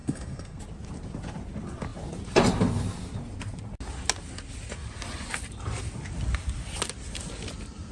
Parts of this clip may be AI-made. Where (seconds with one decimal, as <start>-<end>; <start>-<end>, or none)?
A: 0.0-0.6